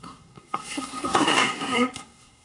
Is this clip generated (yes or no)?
yes